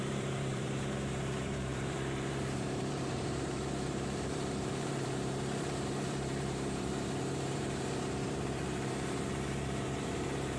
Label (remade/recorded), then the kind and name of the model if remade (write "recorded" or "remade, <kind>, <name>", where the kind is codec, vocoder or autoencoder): remade, vocoder, BigVGAN v2